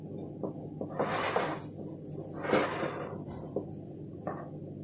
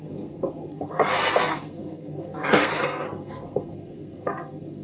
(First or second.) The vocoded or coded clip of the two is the second